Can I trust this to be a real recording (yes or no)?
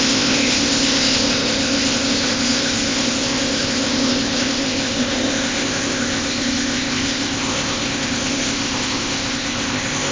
no